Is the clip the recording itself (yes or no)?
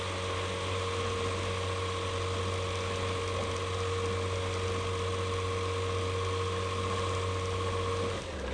yes